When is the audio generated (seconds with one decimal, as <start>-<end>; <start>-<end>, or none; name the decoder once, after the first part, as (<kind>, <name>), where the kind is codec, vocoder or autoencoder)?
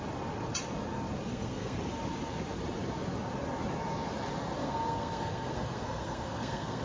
1.3-1.8 (codec, SNAC); 4.6-6.8